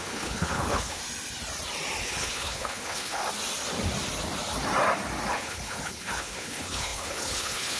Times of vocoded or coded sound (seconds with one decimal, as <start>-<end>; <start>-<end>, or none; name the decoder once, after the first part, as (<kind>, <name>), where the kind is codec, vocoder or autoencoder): 0.0-1.0 (codec, HILCodec); 2.0-3.2; 5.3-7.8